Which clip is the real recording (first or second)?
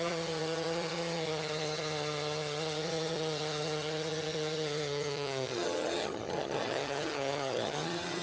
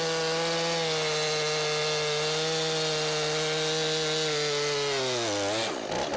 second